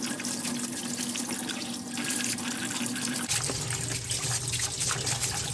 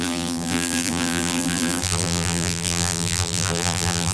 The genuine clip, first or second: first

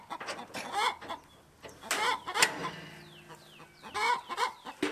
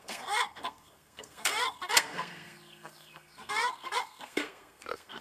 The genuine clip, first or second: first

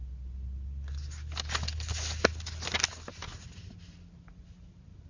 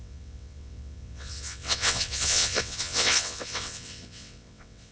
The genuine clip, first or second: first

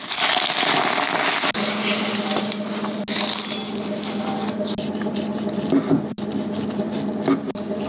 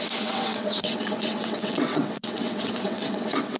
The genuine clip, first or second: first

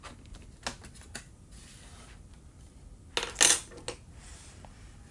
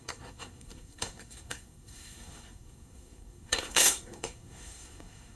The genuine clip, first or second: first